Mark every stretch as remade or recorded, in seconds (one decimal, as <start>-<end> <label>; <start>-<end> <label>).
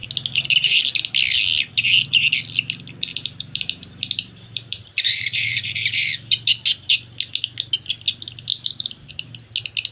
0.0-3.1 recorded; 3.1-6.1 remade; 6.1-8.5 recorded; 8.5-9.1 remade; 9.1-9.9 recorded